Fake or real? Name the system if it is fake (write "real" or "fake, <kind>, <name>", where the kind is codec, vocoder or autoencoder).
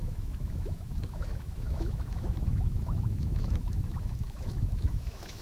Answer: fake, autoencoder, DAC-VAE